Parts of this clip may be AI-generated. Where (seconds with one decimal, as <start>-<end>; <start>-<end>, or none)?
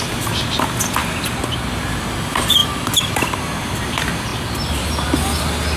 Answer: none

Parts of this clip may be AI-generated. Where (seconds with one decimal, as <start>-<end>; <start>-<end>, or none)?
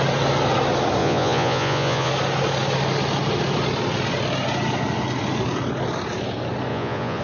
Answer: 1.0-2.1; 6.7-7.2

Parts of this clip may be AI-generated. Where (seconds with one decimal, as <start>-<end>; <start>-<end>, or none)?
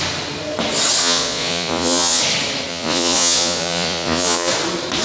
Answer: 1.0-2.2; 2.7-4.5